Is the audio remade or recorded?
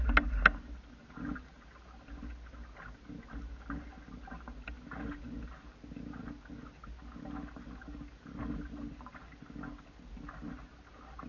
recorded